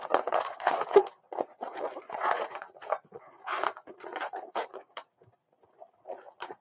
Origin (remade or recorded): remade